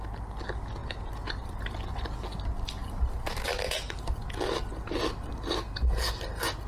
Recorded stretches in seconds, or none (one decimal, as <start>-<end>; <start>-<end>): 0.0-0.8; 1.6-2.8; 3.7-6.7